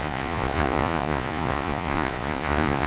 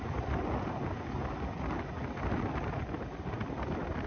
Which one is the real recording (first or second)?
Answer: second